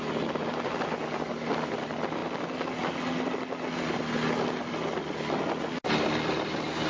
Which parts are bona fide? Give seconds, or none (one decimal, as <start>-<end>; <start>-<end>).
0.0-6.9